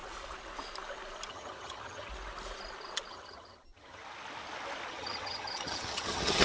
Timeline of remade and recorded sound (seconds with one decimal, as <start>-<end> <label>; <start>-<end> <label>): 0.0-1.3 recorded; 1.3-2.1 remade; 2.1-3.1 recorded; 3.1-4.0 remade; 4.0-4.9 recorded; 4.9-6.4 remade